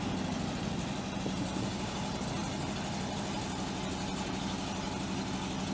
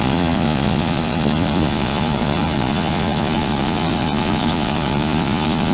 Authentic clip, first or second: first